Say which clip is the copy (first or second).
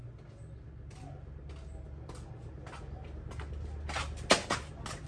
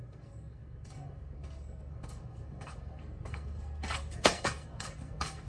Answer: second